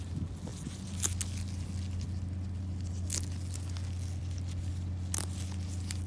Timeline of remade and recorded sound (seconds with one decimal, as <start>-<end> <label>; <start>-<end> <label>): 0.0-6.1 recorded